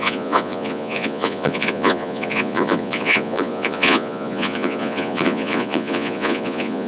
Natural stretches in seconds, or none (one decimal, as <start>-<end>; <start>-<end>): none